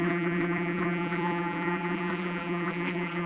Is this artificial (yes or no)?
yes